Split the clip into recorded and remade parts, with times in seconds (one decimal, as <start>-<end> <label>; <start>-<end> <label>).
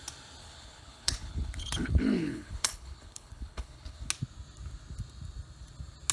0.0-0.4 recorded; 0.4-4.1 remade; 4.1-6.1 recorded